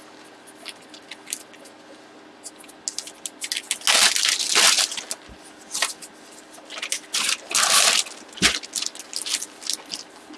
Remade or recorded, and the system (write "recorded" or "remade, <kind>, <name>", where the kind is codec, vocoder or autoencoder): recorded